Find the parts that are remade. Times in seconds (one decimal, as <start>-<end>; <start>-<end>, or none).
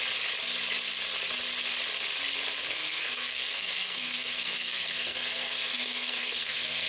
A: 2.6-6.9